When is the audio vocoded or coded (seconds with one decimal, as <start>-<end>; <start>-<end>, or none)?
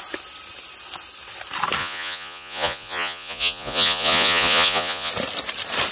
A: 1.8-5.1